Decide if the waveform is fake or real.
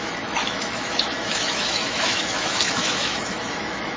fake